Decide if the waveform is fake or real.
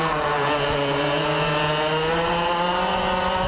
real